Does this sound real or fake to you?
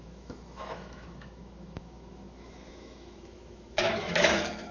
fake